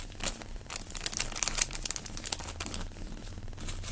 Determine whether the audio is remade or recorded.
recorded